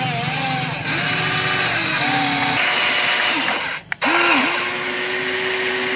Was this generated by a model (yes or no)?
no